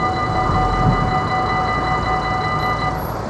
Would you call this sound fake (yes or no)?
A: no